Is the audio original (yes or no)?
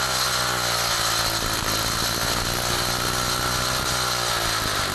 yes